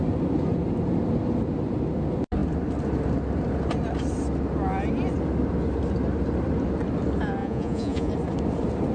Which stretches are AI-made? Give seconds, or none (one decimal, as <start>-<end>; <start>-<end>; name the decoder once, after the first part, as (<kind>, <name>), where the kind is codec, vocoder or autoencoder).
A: 7.4-8.1 (vocoder, Vocos)